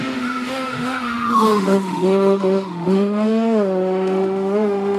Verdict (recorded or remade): remade